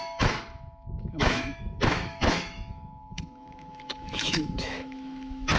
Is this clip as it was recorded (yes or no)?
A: no